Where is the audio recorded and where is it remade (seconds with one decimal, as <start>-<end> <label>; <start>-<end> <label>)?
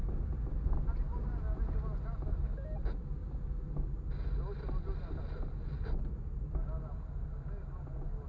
0.0-8.3 recorded